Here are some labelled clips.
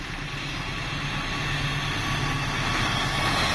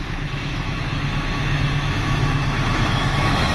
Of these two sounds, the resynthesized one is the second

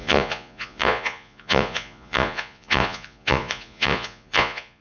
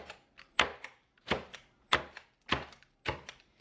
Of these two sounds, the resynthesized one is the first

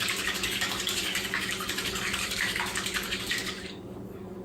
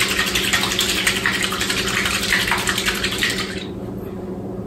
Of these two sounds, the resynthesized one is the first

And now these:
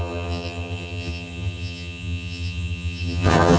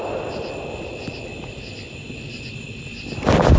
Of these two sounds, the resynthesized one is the first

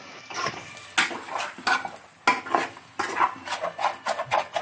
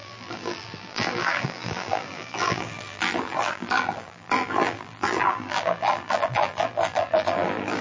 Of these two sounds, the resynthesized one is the second